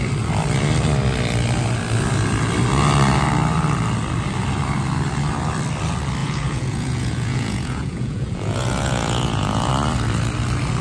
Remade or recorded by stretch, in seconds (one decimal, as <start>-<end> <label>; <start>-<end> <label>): 0.0-6.2 recorded; 6.2-9.7 remade; 9.7-10.8 recorded